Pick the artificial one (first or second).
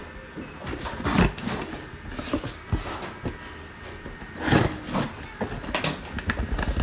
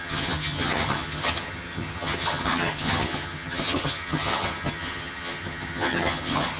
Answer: second